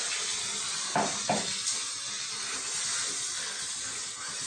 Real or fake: real